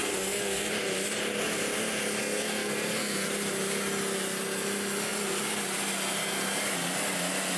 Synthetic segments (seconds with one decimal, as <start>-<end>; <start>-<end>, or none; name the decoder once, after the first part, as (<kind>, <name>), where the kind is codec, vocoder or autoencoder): 0.0-0.7 (codec, SNAC); 2.2-3.3